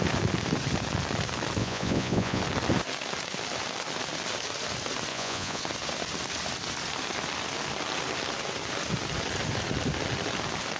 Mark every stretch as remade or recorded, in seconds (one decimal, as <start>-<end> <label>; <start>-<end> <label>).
0.0-1.6 recorded; 1.6-2.4 remade; 2.4-5.1 recorded; 5.1-5.6 remade; 5.6-10.8 recorded